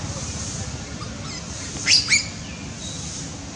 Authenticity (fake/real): real